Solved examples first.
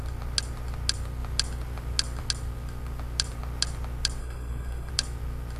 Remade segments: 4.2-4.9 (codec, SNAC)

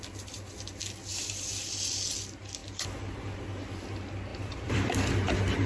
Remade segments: 1.1-1.9 (vocoder, BigVGAN v2); 4.3-5.1